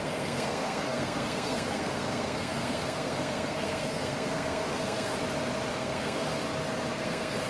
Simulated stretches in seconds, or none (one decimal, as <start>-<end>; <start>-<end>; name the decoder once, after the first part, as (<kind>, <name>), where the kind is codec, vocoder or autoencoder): 0.0-5.1 (codec, SNAC); 5.7-6.3; 6.9-7.5